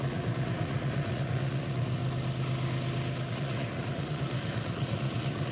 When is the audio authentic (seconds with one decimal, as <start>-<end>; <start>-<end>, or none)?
2.0-3.3